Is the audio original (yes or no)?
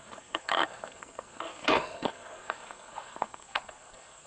no